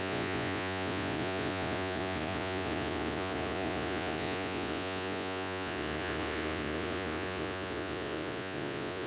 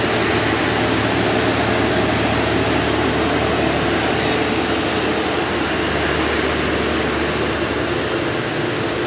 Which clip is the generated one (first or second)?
first